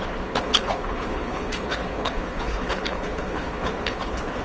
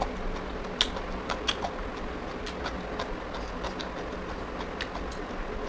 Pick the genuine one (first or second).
second